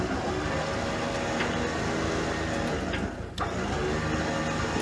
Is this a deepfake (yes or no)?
no